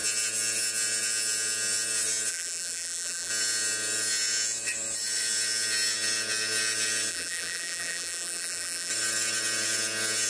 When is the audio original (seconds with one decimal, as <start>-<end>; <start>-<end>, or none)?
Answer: 0.0-2.3; 3.3-7.1; 8.9-10.3